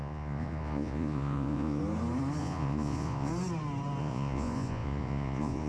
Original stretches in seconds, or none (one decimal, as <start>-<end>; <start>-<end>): 1.8-2.4; 3.3-4.0